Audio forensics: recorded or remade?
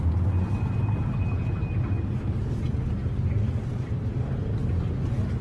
recorded